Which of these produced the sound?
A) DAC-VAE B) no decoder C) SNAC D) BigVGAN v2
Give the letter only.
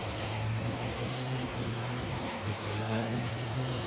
C